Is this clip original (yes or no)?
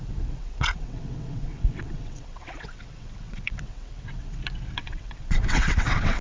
no